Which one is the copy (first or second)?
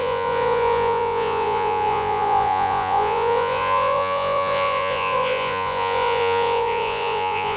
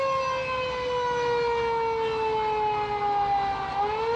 first